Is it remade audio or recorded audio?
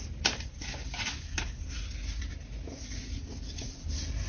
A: recorded